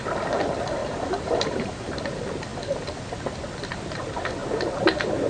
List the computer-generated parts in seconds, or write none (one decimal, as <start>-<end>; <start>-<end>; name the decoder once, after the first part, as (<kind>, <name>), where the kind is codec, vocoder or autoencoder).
0.8-1.8 (vocoder, BigVGAN v2)